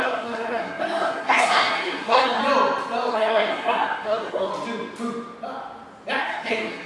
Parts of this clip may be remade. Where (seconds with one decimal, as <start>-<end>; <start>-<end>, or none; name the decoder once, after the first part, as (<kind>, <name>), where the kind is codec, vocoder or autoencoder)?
0.0-2.4 (codec, SNAC); 3.1-4.5; 6.2-6.9